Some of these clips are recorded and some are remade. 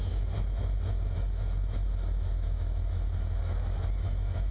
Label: remade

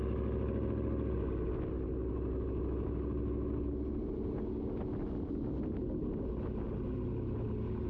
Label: recorded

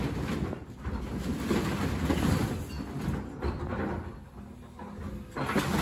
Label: recorded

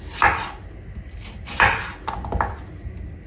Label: recorded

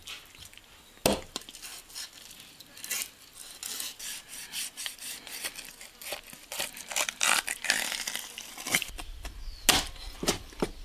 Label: recorded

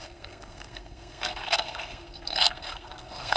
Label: remade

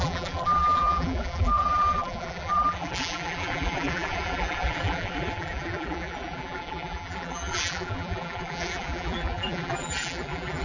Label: remade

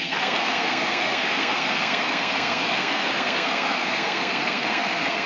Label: remade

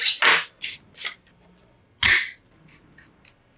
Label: recorded